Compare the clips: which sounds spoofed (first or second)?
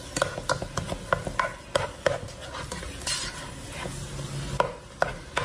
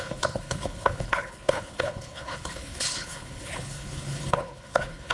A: second